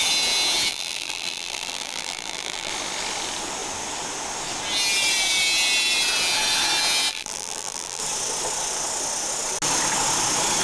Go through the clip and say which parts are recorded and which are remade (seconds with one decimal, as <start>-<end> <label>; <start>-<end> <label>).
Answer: 0.0-0.7 recorded; 0.7-2.7 remade; 2.7-7.1 recorded; 7.1-8.0 remade; 8.0-10.6 recorded

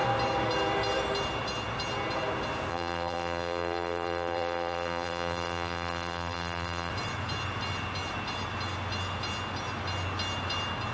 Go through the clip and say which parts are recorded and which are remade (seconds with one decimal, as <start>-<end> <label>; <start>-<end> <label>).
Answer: 0.0-2.7 recorded; 2.7-6.9 remade; 6.9-10.9 recorded

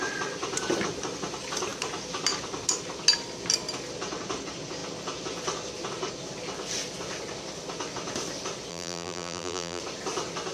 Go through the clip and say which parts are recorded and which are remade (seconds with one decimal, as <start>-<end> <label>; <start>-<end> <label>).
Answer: 0.0-8.7 recorded; 8.7-9.8 remade; 9.8-10.5 recorded

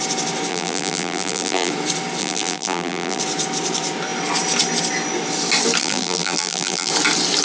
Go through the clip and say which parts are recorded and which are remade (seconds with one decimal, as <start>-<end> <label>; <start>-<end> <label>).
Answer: 0.0-0.5 recorded; 0.5-1.7 remade; 1.7-2.2 recorded; 2.2-3.2 remade; 3.2-5.8 recorded; 5.8-6.9 remade; 6.9-7.4 recorded

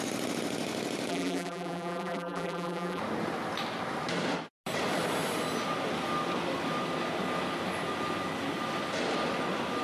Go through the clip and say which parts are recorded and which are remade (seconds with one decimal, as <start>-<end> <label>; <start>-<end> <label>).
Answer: 0.0-1.1 recorded; 1.1-3.0 remade; 3.0-9.8 recorded

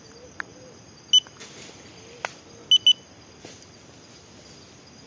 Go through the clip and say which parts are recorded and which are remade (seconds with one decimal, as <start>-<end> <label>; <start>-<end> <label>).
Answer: 0.0-5.1 recorded

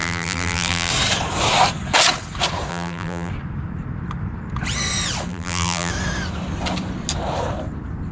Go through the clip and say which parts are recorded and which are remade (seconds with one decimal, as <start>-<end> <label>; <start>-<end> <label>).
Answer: 0.0-0.9 remade; 0.9-2.7 recorded; 2.7-3.3 remade; 3.3-5.3 recorded; 5.3-5.9 remade; 5.9-8.1 recorded

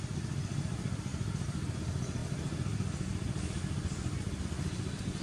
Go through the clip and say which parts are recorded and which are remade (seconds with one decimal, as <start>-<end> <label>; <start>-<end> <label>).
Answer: 0.0-5.2 recorded